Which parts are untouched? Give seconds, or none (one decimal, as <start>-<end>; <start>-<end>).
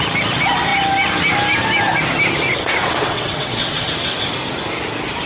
0.0-2.5; 3.9-5.3